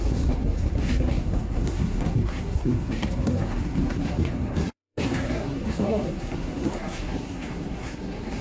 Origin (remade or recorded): remade